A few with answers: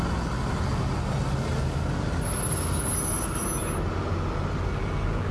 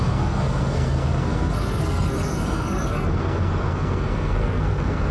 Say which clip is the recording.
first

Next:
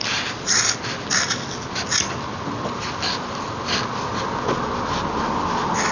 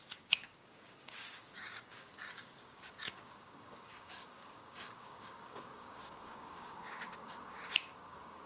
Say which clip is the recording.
first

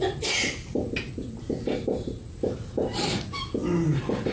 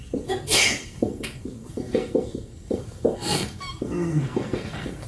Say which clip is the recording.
first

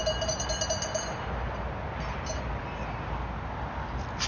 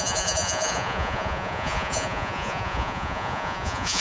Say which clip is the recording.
first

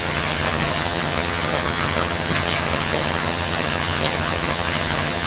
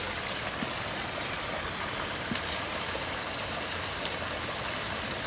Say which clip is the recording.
second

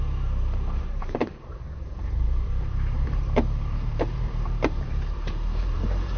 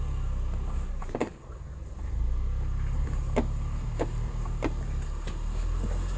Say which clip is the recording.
second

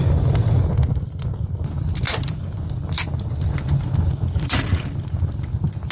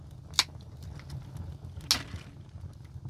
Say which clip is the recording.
second